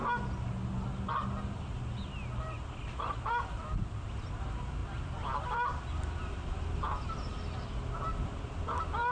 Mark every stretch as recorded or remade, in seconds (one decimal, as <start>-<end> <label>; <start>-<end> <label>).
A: 0.0-9.1 recorded